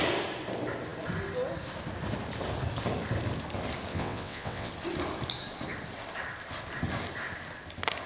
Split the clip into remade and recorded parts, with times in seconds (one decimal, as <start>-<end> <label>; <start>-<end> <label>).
0.0-3.9 recorded; 3.9-4.7 remade; 4.7-8.1 recorded